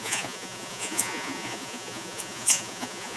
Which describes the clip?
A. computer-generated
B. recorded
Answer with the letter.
A